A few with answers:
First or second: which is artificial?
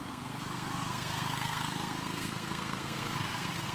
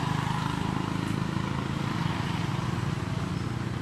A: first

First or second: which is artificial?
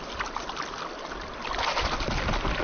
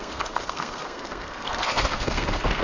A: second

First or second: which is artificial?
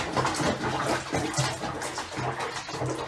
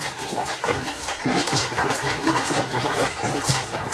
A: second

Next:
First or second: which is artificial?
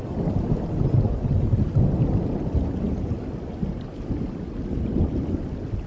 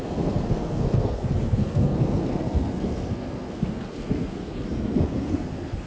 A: second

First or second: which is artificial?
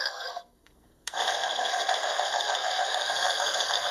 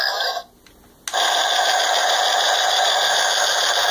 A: first